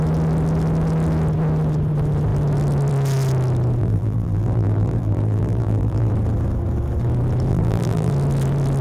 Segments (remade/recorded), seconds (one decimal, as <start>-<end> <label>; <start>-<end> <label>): 0.0-3.8 recorded; 3.8-6.1 remade; 6.1-7.5 recorded; 7.5-8.1 remade; 8.1-8.8 recorded